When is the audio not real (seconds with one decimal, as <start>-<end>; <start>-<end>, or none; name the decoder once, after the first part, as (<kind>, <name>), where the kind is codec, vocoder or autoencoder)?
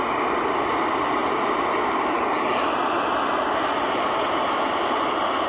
none